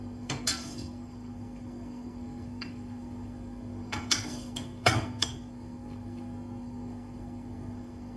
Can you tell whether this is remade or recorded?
remade